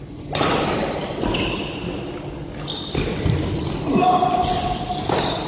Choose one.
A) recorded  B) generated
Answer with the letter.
A